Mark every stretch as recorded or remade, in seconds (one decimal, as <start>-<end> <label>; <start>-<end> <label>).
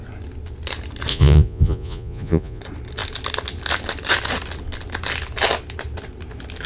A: 0.0-1.1 recorded; 1.1-2.6 remade; 2.6-6.7 recorded